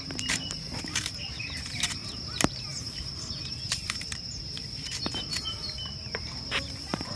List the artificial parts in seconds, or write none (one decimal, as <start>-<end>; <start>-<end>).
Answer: 0.0-7.2